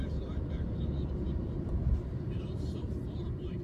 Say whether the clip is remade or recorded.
remade